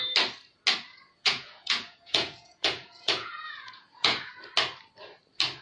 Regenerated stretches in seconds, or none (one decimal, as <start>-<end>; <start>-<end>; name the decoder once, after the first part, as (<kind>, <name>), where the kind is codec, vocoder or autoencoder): 0.9-4.3 (vocoder, Vocos)